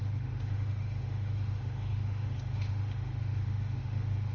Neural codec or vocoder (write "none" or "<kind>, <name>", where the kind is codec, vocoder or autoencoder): autoencoder, DAC-VAE